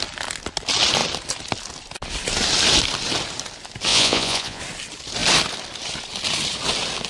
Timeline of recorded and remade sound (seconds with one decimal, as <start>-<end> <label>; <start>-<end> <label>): 0.0-3.9 recorded; 3.9-4.6 remade; 4.6-7.1 recorded